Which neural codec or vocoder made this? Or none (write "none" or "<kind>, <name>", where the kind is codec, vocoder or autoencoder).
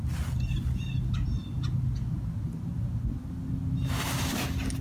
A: none